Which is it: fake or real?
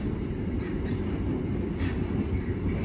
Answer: real